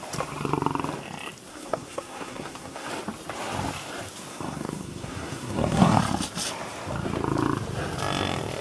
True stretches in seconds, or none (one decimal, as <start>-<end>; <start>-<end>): 0.0-1.5; 2.9-4.3; 6.0-8.6